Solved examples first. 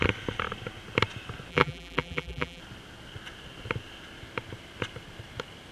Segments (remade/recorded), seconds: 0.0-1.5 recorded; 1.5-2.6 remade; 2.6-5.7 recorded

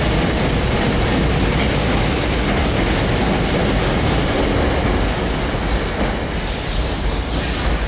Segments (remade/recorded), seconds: 0.0-7.9 recorded